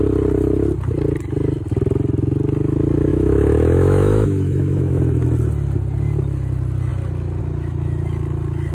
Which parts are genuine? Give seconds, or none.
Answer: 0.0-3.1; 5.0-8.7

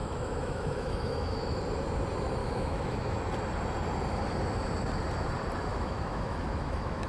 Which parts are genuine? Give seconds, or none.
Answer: 1.6-2.4; 3.2-5.7

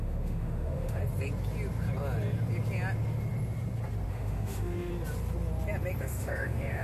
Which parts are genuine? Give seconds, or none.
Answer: 1.0-4.1; 4.9-6.0